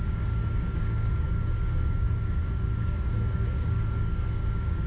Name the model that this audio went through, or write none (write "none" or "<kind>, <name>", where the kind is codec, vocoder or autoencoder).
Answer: codec, DAC